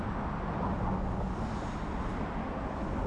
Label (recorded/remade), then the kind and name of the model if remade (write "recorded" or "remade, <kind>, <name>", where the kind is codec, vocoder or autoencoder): recorded